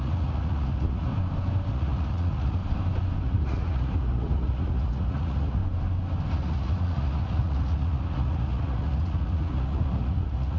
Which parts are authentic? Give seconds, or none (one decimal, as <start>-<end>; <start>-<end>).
1.1-1.7; 2.6-3.2; 5.6-6.3

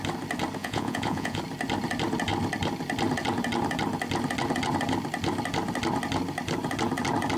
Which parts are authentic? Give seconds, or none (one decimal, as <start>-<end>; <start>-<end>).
0.0-0.6; 1.4-7.4

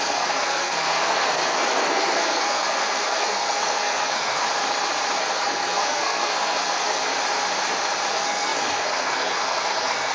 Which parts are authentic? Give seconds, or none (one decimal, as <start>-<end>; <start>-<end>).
4.4-5.2; 7.1-8.1

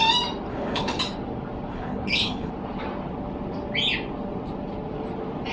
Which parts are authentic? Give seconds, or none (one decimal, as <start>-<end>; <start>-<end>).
0.0-0.5; 1.0-1.7; 2.5-5.5

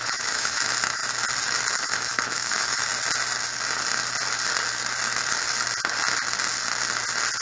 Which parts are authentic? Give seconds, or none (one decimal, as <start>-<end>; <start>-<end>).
1.0-1.7; 2.9-7.4

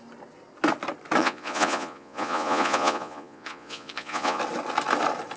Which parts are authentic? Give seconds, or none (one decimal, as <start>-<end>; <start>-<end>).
0.0-1.2; 4.4-5.4

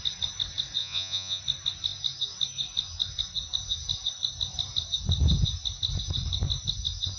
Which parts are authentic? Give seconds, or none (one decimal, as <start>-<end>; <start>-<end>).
0.0-0.8; 1.4-7.2

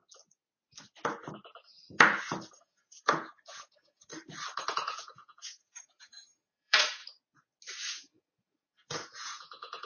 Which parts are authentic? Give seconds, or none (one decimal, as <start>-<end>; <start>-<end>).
0.0-2.6; 4.1-4.7; 7.0-7.9